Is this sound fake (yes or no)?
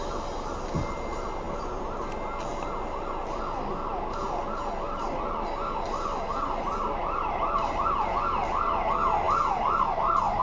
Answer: no